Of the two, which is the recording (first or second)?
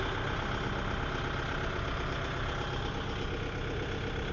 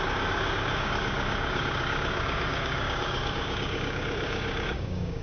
first